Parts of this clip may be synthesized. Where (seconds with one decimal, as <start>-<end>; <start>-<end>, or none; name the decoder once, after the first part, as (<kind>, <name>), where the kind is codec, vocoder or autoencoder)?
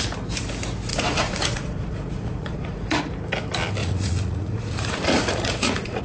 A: 0.9-3.0 (vocoder, Vocos); 3.8-6.0